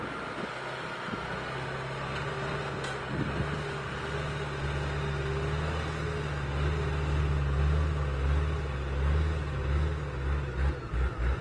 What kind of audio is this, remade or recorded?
recorded